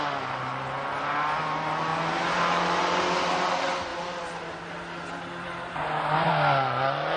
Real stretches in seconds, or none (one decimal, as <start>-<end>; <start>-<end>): 0.0-7.2